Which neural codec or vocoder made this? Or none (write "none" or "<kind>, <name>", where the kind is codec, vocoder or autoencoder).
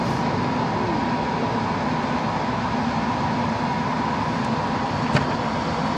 none